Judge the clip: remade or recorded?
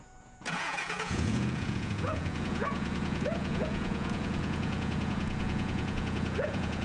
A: remade